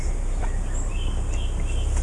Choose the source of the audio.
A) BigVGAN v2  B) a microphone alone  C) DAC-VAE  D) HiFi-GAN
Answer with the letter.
B